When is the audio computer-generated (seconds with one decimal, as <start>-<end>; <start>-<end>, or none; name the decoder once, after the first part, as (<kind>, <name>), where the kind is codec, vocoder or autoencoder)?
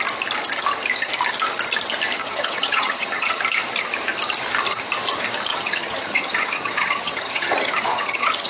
2.2-3.4 (vocoder, HiFi-GAN); 5.5-8.5